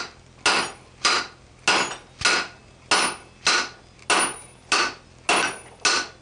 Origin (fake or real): real